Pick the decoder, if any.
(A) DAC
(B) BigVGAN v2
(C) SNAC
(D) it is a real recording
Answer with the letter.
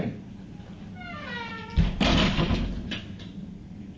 D